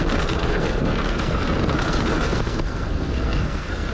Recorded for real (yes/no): no